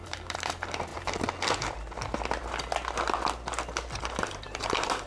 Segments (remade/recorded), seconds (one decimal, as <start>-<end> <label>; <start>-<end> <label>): 0.0-0.9 remade; 0.9-4.0 recorded; 4.0-5.1 remade